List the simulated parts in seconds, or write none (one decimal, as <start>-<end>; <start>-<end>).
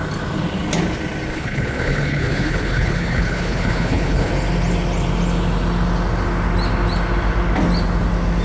1.3-4.3